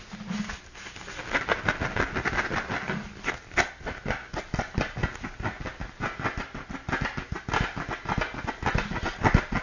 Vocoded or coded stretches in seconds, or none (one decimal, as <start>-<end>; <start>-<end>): none